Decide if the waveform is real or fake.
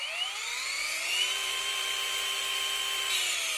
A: fake